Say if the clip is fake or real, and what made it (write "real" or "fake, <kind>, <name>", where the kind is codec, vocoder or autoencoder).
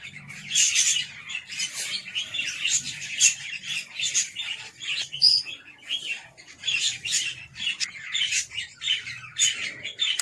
fake, vocoder, BigVGAN v2